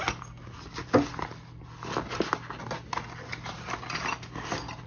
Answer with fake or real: real